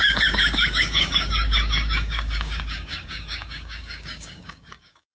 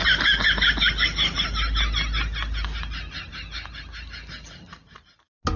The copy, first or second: first